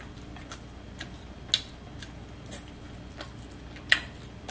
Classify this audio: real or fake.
real